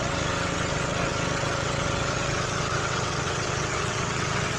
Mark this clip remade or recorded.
remade